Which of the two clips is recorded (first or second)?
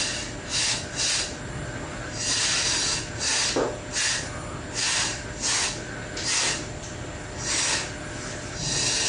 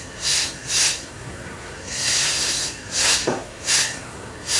first